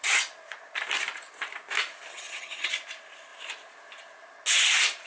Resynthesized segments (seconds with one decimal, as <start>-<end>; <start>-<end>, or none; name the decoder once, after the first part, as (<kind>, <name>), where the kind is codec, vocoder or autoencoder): 2.1-2.7 (vocoder, HiFi-GAN)